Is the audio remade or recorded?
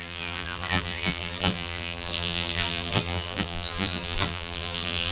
remade